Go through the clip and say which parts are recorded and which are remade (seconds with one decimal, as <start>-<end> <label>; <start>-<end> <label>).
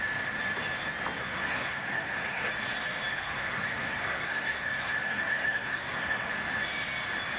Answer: 0.0-1.2 recorded; 1.2-2.5 remade; 2.5-3.1 recorded; 3.1-6.3 remade; 6.3-7.4 recorded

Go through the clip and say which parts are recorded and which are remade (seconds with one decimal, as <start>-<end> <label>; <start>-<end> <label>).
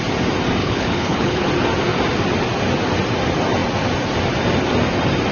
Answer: 0.0-0.6 recorded; 0.6-1.5 remade; 1.5-5.3 recorded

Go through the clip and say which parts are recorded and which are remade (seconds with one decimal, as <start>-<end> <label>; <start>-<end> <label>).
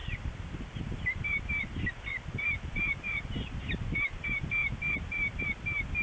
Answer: 0.0-3.6 remade; 3.6-4.6 recorded; 4.6-5.4 remade; 5.4-6.0 recorded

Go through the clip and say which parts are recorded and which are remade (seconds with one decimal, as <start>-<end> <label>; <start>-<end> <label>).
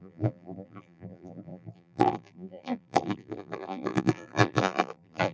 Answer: 0.0-5.3 remade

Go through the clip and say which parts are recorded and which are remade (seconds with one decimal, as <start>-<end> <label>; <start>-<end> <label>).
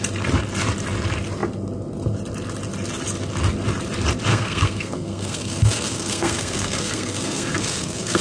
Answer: 0.0-4.3 recorded; 4.3-8.2 remade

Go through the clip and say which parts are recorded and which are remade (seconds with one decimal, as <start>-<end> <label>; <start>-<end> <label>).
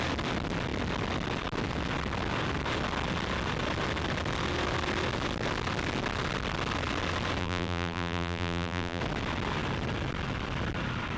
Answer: 0.0-7.4 recorded; 7.4-9.0 remade; 9.0-11.2 recorded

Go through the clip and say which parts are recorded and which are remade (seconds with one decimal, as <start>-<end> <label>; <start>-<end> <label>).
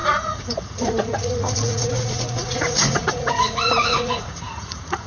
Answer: 0.0-5.1 remade